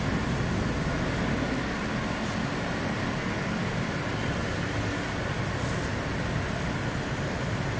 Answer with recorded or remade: recorded